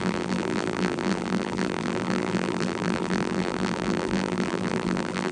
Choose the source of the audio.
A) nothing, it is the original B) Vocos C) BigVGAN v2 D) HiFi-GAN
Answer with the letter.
C